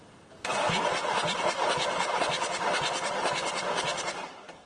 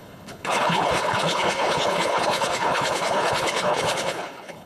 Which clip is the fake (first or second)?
second